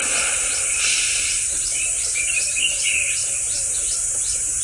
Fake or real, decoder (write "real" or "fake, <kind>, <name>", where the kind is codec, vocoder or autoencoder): fake, vocoder, BigVGAN v2